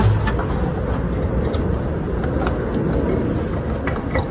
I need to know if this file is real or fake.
real